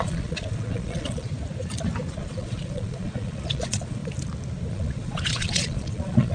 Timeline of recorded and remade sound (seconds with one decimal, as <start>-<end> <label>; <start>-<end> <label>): 0.0-1.3 remade; 1.3-2.1 recorded; 2.1-4.0 remade; 4.0-4.7 recorded; 4.7-6.3 remade